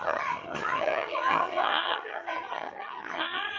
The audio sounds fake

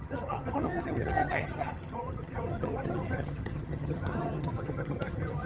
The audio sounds fake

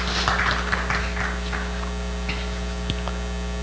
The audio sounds real